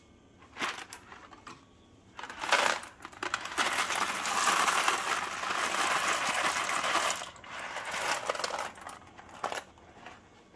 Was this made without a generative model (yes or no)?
yes